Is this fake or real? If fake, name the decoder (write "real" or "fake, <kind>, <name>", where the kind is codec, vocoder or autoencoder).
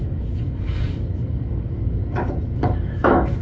fake, codec, DAC